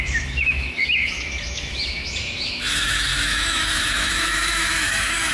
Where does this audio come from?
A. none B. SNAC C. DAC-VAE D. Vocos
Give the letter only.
C